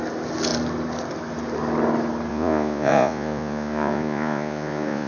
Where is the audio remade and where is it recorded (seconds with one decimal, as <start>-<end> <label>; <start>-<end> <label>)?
0.0-2.3 recorded; 2.3-5.1 remade